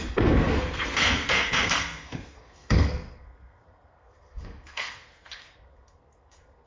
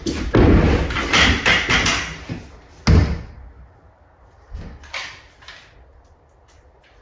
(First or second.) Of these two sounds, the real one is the second